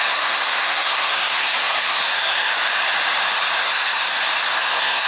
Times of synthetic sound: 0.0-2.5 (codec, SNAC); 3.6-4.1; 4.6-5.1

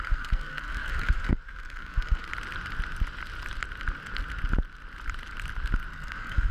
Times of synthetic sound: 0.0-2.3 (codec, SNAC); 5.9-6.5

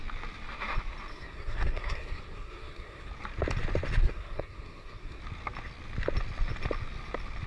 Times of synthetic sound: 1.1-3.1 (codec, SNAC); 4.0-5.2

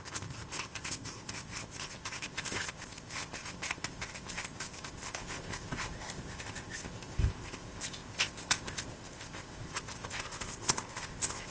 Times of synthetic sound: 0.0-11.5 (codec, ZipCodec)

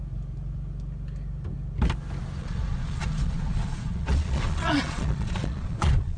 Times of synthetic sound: 2.4-6.2 (vocoder, Vocos)

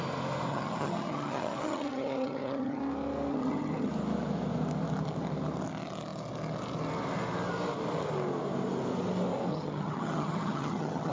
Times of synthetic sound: 0.5-2.8 (vocoder, HiFi-GAN); 3.3-3.9; 9.5-11.1

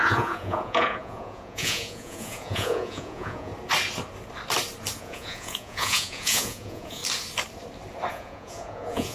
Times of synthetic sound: 0.0-3.5 (vocoder, Vocos); 5.0-7.0; 8.1-9.1